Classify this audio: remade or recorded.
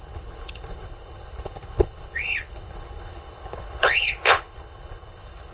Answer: remade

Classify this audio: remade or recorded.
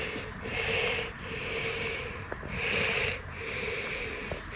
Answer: remade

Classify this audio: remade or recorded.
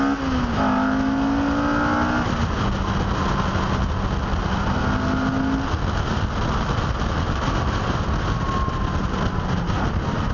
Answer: recorded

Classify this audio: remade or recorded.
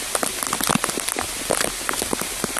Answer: recorded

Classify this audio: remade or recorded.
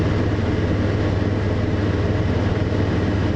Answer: recorded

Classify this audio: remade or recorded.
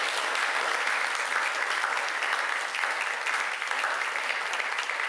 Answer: recorded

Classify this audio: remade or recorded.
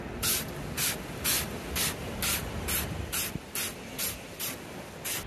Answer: recorded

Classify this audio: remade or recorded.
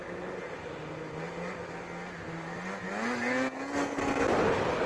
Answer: recorded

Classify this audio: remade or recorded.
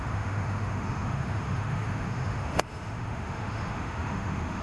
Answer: remade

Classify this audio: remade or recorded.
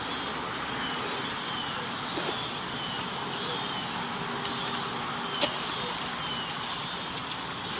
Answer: recorded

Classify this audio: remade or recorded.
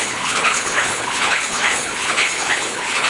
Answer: remade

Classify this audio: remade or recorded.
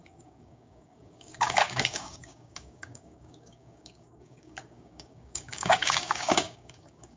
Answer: remade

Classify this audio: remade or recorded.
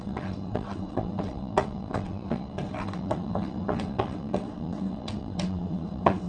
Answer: remade